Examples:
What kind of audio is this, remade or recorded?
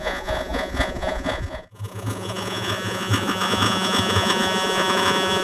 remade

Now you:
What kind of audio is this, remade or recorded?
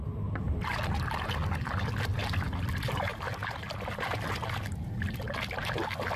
recorded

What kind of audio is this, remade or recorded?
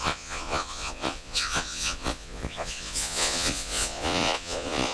remade